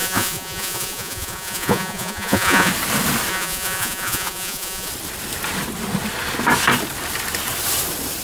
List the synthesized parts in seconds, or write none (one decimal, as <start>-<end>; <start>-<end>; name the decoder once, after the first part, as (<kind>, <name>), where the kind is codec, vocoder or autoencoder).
0.0-2.7 (vocoder, Vocos); 3.3-4.9